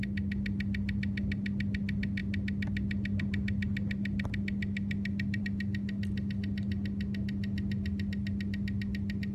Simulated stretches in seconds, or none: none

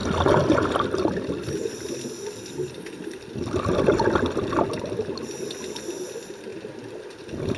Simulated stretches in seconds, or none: none

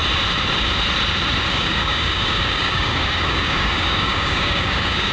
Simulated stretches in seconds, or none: 1.5-5.1 (codec, DAC)

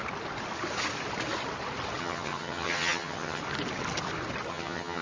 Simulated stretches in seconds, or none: 2.0-3.4 (vocoder, HiFi-GAN); 4.5-5.0

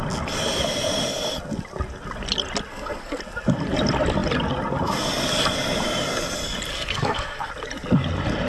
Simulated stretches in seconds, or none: 2.7-3.2 (codec, SNAC); 6.7-7.5

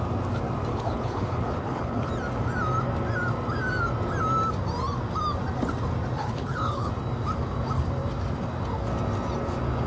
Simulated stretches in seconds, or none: 0.7-2.1 (codec, HILCodec); 6.2-6.9

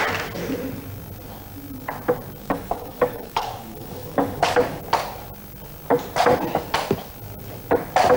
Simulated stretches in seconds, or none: 2.4-4.8 (codec, DAC)